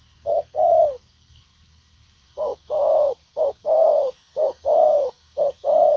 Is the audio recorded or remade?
remade